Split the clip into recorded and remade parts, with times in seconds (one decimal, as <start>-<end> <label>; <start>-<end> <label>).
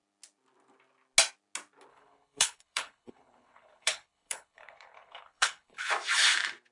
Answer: 0.0-1.9 recorded; 1.9-5.9 remade; 5.9-6.7 recorded